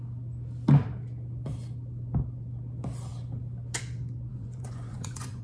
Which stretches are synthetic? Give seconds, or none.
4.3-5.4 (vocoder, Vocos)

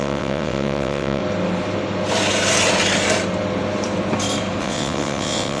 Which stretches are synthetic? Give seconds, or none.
0.0-1.2 (vocoder, WaveNeXt); 4.6-5.6

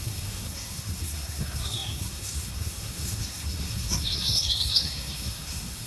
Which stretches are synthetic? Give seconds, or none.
0.0-5.9 (codec, SNAC)